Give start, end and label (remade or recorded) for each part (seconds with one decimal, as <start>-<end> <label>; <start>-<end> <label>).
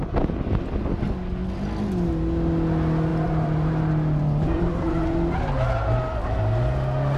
0.0-3.1 recorded; 3.1-4.9 remade; 4.9-7.2 recorded